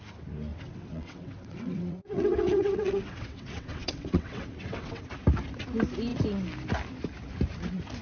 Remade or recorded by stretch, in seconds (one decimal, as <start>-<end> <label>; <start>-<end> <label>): 0.0-0.5 recorded; 0.5-5.0 remade; 5.0-8.0 recorded